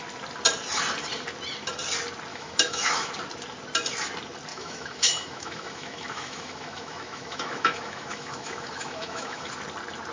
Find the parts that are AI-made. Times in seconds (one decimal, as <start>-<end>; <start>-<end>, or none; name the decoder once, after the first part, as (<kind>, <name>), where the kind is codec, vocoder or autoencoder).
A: 2.3-3.1 (autoencoder, DAC-VAE); 4.5-9.5